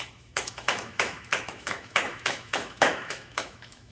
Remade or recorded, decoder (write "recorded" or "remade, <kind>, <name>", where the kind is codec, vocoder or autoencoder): remade, autoencoder, DAC-VAE